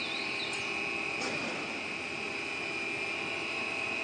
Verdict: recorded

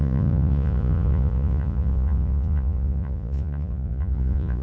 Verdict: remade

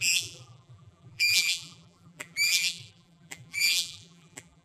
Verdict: remade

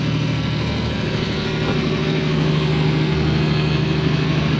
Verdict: remade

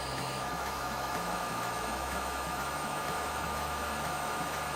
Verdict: remade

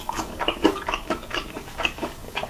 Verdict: remade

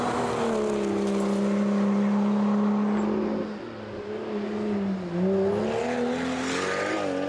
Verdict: recorded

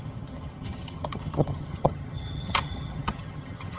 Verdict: remade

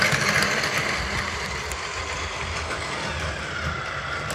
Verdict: recorded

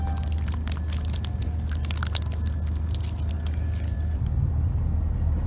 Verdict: recorded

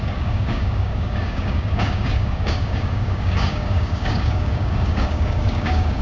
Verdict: remade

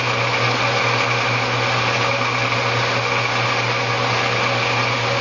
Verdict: recorded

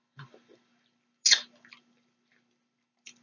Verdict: recorded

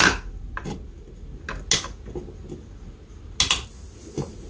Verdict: recorded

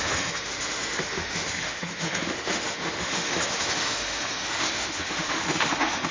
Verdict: remade